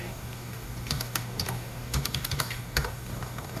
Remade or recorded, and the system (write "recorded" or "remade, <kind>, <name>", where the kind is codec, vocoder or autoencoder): remade, codec, DAC